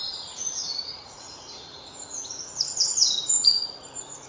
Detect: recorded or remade remade